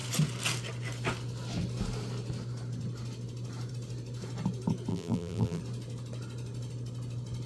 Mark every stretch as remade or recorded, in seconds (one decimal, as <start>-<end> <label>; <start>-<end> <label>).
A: 0.0-4.9 recorded; 4.9-5.6 remade; 5.6-7.5 recorded